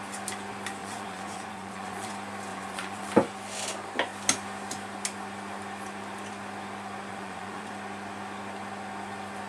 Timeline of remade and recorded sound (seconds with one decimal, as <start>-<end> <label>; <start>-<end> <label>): 0.0-0.8 recorded; 0.8-2.1 remade; 2.1-2.5 recorded; 2.5-3.1 remade; 3.1-7.1 recorded; 7.1-7.7 remade; 7.7-9.5 recorded